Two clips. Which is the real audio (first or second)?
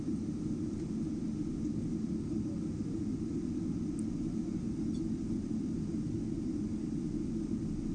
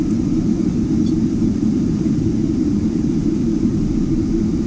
first